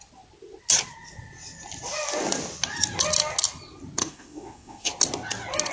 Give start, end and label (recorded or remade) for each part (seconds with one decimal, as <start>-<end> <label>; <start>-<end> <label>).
0.0-4.0 recorded; 4.0-4.9 remade; 4.9-5.7 recorded